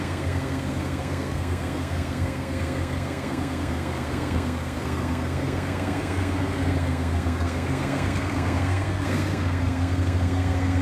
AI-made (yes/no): yes